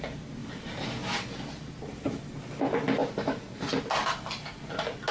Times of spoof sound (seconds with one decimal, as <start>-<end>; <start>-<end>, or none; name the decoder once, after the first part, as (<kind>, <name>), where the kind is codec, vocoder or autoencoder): 3.0-3.7 (vocoder, BigVGAN v2)